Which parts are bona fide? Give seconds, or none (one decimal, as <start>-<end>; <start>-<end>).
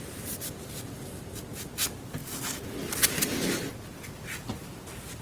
0.0-5.2